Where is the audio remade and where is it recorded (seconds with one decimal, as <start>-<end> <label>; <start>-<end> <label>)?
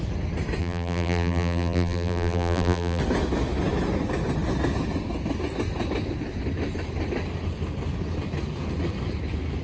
0.0-0.6 recorded; 0.6-3.0 remade; 3.0-9.6 recorded